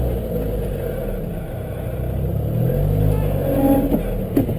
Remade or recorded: recorded